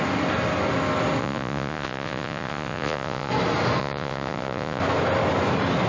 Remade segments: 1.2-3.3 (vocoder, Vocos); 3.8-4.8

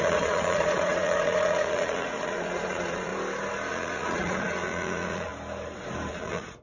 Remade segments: 0.0-3.1 (vocoder, Vocos); 3.7-5.3; 6.1-6.6

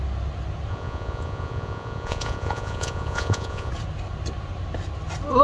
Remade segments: 0.7-3.7 (vocoder, Vocos)

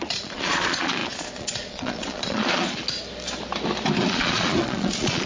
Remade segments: 0.0-2.8 (vocoder, Vocos); 4.0-5.3

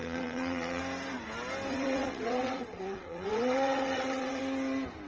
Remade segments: 0.0-0.8 (vocoder, WaveNeXt); 1.7-4.4

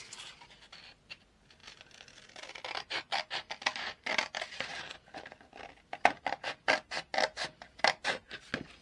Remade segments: none

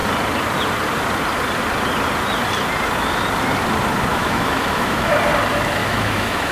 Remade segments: 4.1-5.1 (autoencoder, DAC-VAE); 5.8-6.5